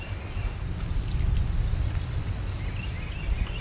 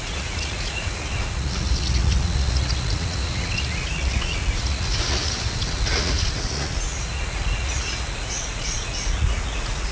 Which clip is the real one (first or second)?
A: first